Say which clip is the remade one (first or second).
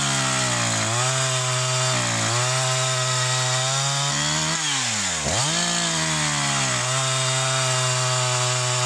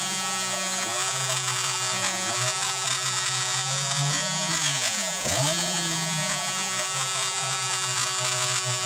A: second